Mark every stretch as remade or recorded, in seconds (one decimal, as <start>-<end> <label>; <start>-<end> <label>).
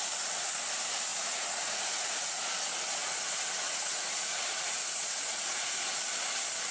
0.0-1.1 recorded; 1.1-2.4 remade; 2.4-3.0 recorded; 3.0-6.0 remade; 6.0-6.7 recorded